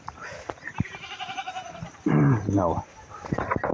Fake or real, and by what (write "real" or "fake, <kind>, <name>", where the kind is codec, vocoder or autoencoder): fake, vocoder, BigVGAN v2